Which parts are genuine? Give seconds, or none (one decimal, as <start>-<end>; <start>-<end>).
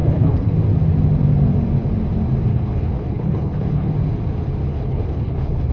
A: 0.5-2.5; 3.9-4.7